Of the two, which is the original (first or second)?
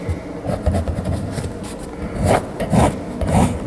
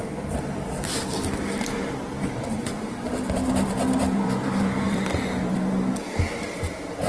first